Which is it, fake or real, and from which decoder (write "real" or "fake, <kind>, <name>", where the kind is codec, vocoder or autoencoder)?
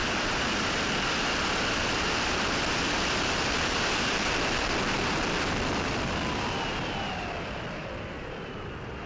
fake, vocoder, BigVGAN v2